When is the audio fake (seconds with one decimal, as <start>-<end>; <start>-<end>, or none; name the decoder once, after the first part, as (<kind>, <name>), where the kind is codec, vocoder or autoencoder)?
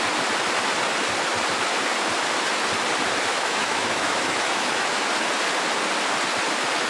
3.3-5.1 (autoencoder, DAC-VAE)